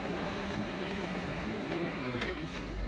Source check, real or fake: fake